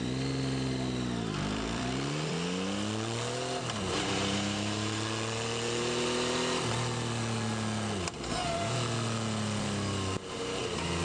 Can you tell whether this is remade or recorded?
remade